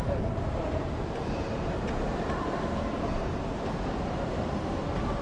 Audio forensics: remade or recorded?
remade